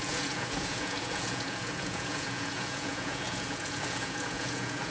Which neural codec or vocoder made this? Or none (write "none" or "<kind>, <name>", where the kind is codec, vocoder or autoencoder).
vocoder, Vocos